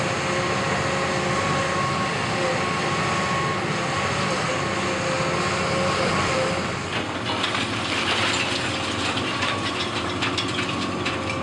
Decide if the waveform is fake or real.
real